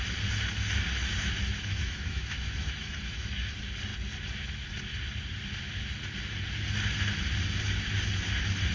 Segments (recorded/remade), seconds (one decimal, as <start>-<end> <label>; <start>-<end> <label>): 0.0-1.0 recorded; 1.0-3.5 remade; 3.5-8.7 recorded